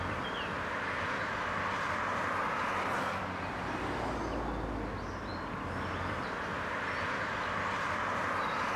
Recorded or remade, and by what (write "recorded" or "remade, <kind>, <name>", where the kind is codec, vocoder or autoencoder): recorded